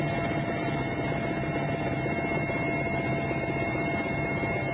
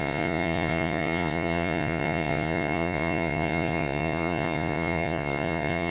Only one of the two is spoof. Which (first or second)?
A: second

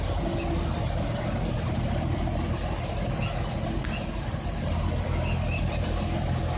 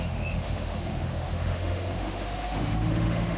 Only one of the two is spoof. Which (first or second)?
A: second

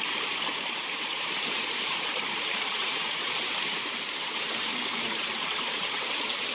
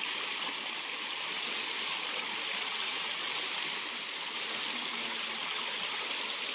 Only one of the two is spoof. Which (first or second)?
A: first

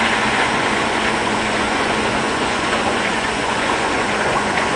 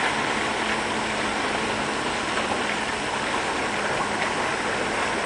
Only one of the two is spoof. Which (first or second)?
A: first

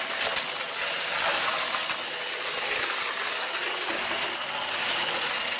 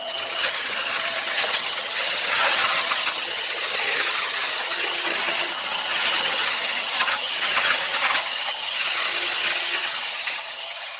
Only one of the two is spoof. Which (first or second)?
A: second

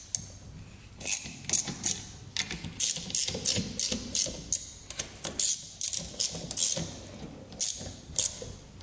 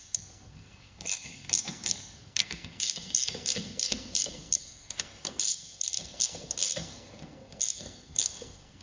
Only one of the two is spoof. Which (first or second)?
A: second